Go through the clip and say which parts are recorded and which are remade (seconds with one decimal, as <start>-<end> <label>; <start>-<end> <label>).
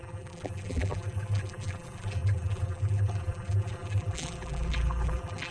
0.0-5.5 remade